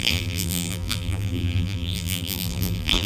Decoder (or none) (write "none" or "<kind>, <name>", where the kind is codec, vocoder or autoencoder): vocoder, BigVGAN v2